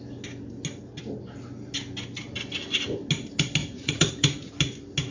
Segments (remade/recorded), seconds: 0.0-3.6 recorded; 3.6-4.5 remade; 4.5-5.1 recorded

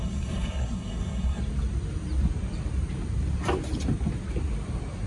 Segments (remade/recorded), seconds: 0.0-1.4 remade; 1.4-5.1 recorded